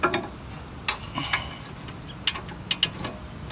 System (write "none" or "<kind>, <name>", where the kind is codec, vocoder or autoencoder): none